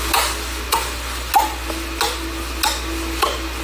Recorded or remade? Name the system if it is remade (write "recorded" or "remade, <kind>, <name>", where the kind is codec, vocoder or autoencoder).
recorded